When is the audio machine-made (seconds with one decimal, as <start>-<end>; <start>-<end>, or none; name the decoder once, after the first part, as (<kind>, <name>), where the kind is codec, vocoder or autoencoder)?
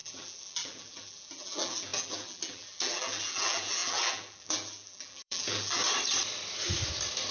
0.0-5.8 (vocoder, BigVGAN v2)